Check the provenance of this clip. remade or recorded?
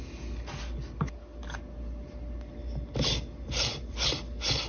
recorded